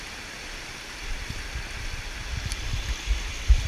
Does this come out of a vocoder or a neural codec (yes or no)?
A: no